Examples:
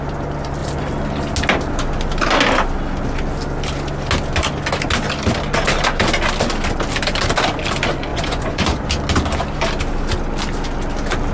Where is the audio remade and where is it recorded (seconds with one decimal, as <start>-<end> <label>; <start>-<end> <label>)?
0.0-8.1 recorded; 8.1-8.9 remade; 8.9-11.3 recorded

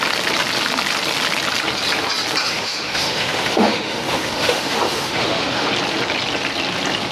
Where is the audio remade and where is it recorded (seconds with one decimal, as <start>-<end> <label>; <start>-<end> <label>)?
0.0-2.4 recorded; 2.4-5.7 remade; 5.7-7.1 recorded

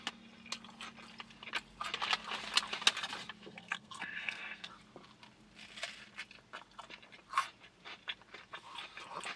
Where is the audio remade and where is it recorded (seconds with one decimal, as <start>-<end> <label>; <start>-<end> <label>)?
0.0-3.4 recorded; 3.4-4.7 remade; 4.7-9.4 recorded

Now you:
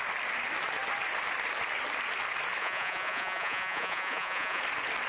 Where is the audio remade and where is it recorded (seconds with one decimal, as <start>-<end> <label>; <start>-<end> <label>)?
0.0-2.6 recorded; 2.6-4.6 remade; 4.6-5.1 recorded

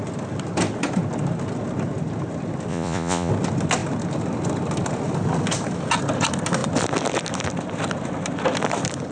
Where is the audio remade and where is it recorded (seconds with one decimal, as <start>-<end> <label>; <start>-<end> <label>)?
0.0-2.7 recorded; 2.7-3.3 remade; 3.3-9.1 recorded

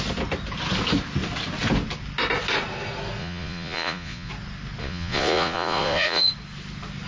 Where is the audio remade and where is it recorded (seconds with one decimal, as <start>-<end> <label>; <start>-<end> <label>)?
0.0-3.2 recorded; 3.2-4.3 remade; 4.3-4.8 recorded; 4.8-6.3 remade; 6.3-7.1 recorded